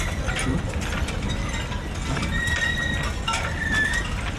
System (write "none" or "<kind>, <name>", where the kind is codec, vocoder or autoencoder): none